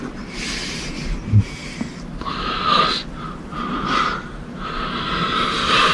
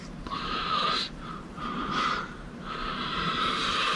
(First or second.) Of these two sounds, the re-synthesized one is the second